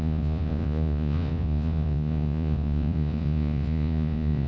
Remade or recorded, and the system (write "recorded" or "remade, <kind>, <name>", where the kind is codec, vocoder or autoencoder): remade, vocoder, Vocos